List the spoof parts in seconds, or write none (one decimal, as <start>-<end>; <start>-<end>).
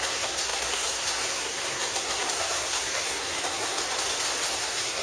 0.0-3.8; 4.5-5.0